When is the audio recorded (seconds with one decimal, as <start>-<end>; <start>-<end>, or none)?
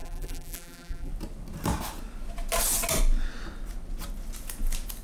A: 1.1-5.0